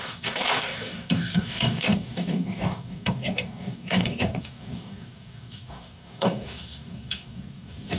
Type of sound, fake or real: fake